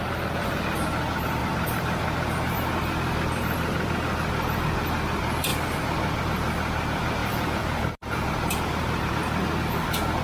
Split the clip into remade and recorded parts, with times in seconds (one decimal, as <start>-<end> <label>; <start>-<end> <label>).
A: 0.0-1.4 recorded; 1.4-2.7 remade; 2.7-7.2 recorded; 7.2-9.1 remade; 9.1-10.2 recorded